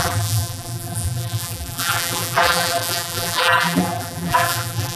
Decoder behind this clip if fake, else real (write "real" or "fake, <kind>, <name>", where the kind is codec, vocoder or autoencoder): fake, vocoder, BigVGAN v2